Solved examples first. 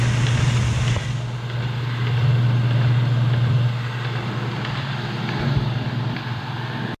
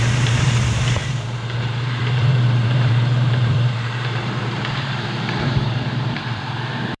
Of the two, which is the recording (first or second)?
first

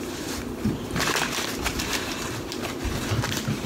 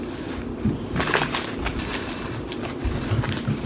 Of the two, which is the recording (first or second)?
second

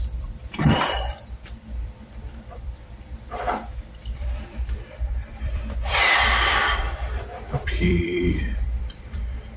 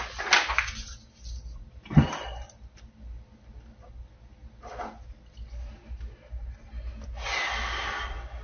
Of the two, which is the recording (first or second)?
second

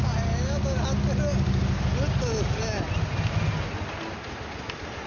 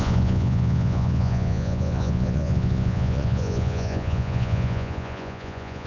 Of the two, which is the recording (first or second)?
first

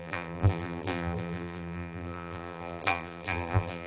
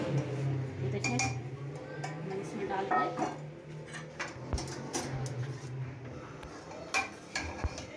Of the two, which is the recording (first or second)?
second